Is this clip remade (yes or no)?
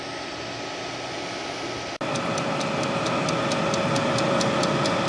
no